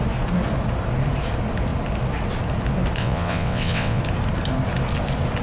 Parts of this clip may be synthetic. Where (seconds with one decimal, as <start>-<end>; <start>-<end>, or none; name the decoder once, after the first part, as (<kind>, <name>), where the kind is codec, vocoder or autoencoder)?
3.0-4.0 (vocoder, WaveNeXt)